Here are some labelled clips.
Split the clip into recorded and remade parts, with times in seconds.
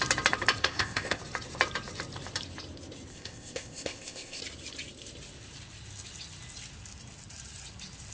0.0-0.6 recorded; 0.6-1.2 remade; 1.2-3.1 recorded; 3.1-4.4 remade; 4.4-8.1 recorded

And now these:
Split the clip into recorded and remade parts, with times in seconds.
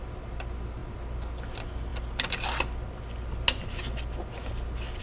0.0-5.0 recorded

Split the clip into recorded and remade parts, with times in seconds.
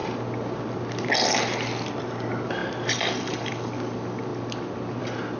0.0-2.6 recorded; 2.6-3.5 remade; 3.5-5.4 recorded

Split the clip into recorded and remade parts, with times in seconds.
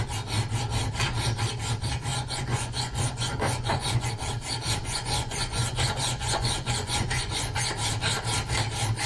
0.0-2.1 recorded; 2.1-4.1 remade; 4.1-4.8 recorded; 4.8-7.7 remade; 7.7-9.1 recorded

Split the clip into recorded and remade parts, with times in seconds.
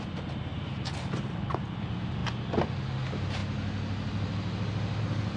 0.0-0.5 recorded; 0.5-1.1 remade; 1.1-5.4 recorded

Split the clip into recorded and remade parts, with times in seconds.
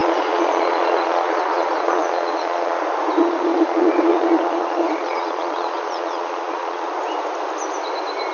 0.0-2.8 remade; 2.8-3.2 recorded; 3.2-6.9 remade; 6.9-8.3 recorded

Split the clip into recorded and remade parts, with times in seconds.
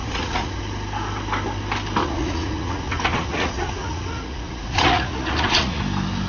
0.0-0.6 remade; 0.6-2.0 recorded; 2.0-5.8 remade; 5.8-6.3 recorded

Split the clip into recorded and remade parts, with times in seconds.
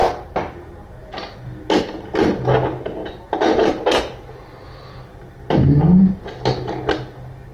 0.0-7.5 recorded